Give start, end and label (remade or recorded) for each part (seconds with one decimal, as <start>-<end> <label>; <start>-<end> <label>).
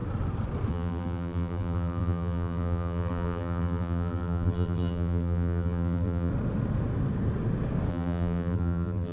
0.0-0.7 recorded; 0.7-6.3 remade; 6.3-7.9 recorded; 7.9-9.1 remade